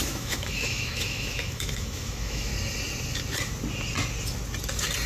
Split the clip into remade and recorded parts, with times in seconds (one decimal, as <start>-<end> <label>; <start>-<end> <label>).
0.0-2.5 remade; 2.5-5.1 recorded